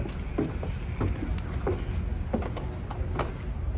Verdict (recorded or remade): recorded